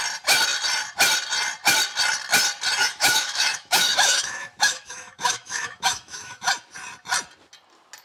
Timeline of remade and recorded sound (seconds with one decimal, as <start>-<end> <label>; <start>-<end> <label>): 0.0-2.8 recorded; 2.8-6.5 remade; 6.5-8.0 recorded